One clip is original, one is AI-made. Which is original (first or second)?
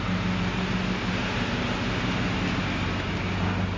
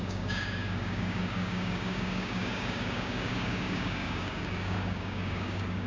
first